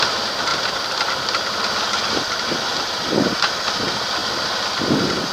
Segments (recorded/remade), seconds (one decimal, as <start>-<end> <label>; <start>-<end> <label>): 0.0-5.3 recorded